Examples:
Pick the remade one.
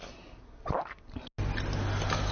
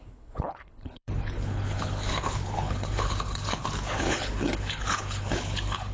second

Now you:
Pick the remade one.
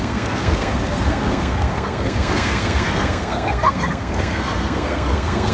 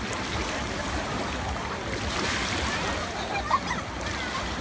first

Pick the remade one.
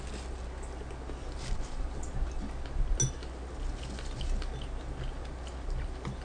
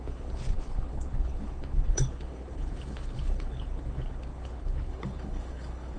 second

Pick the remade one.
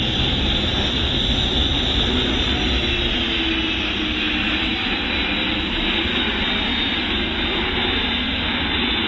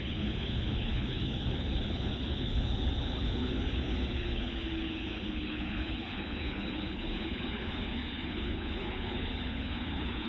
second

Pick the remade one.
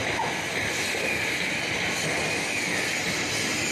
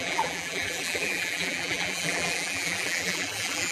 second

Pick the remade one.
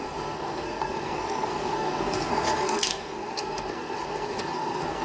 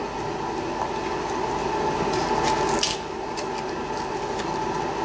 first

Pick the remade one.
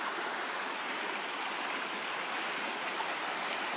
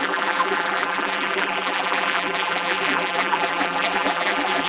second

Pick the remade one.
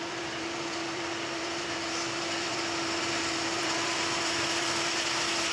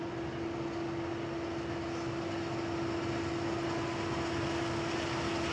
first